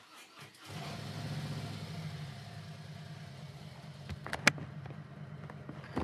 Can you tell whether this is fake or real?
real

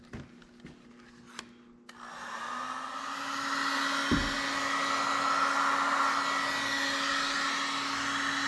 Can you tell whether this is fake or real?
real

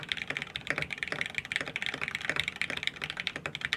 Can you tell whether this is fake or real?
fake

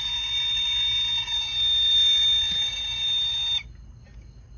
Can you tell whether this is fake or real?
real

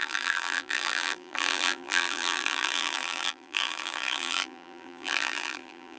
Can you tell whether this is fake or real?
fake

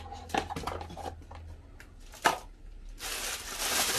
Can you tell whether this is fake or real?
real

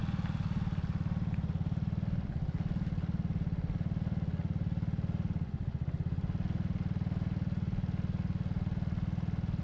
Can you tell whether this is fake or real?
real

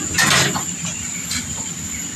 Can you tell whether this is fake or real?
fake